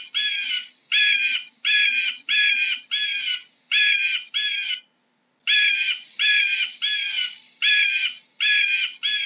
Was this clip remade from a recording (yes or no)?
no